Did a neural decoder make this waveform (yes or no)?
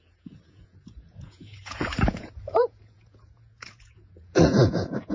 yes